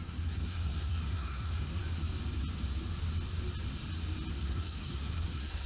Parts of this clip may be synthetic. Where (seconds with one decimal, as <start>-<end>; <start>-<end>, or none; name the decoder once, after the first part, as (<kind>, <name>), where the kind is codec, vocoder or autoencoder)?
0.0-1.8 (codec, SNAC); 4.3-5.7